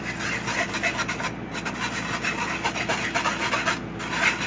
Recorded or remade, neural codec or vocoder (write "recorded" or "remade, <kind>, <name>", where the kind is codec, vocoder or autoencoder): recorded